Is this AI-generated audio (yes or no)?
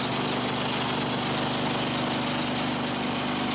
no